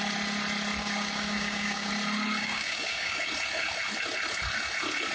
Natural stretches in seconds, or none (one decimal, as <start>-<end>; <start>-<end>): 0.0-0.8; 1.9-2.4; 3.2-5.1